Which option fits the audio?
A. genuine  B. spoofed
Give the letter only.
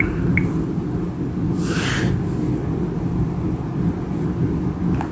A